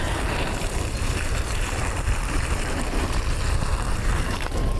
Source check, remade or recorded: remade